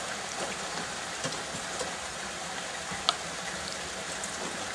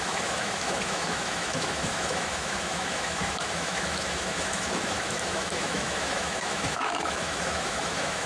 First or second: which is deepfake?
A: second